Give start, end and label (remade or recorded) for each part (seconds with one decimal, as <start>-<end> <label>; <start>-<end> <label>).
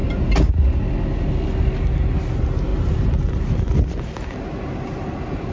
0.0-5.5 recorded